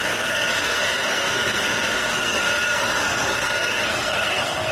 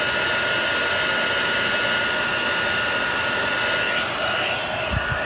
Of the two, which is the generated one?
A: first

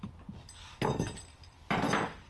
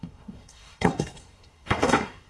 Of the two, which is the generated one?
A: second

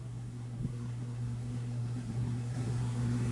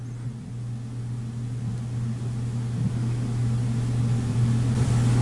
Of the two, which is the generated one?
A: first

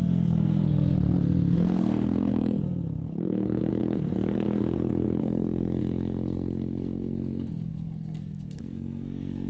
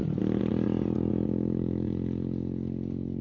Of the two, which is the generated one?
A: first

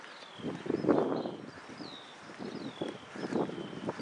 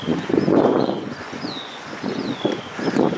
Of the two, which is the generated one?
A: second